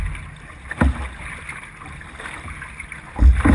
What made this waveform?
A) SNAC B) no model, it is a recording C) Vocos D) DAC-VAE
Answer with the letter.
B